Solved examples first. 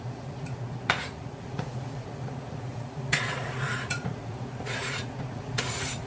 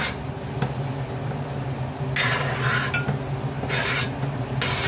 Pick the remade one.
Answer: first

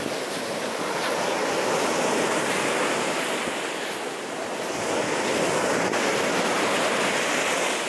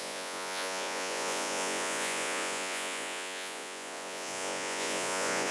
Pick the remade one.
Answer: second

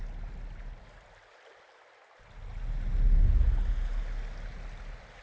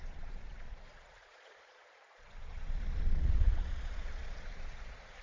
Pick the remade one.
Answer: second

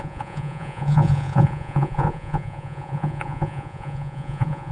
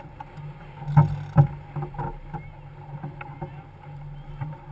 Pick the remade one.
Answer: first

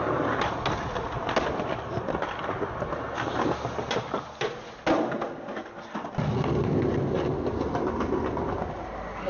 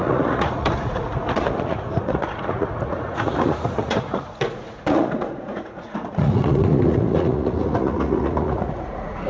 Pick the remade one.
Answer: second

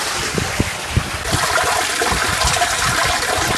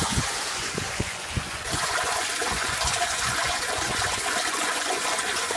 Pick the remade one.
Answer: second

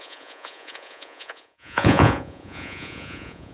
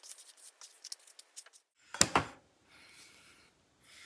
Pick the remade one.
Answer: first